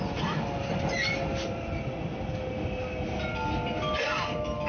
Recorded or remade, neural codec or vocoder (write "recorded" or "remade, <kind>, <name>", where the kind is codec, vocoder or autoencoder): recorded